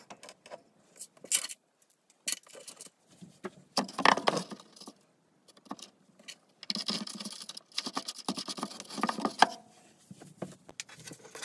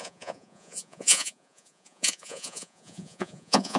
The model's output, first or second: second